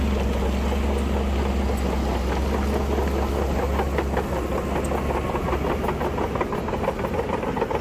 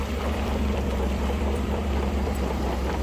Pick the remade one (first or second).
second